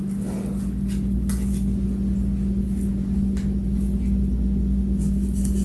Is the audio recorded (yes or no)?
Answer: yes